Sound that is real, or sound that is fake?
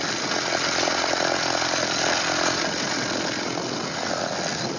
real